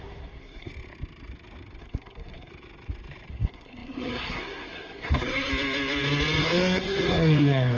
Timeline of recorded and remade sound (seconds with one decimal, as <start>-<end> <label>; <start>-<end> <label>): 0.0-0.7 remade; 0.7-1.8 recorded; 1.8-2.5 remade; 2.5-3.3 recorded; 3.3-5.5 remade; 5.5-6.4 recorded; 6.4-7.8 remade